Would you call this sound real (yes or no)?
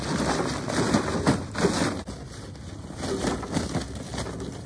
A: yes